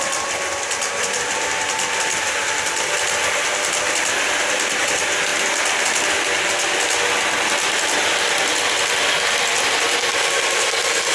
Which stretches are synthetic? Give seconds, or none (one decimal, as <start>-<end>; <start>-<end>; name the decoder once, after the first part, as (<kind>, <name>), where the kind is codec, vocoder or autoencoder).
none